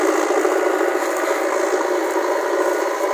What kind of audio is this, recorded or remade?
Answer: recorded